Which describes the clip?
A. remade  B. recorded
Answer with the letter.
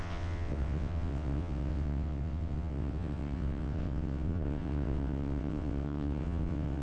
A